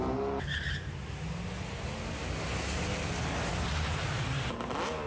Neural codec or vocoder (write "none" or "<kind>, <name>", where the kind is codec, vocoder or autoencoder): none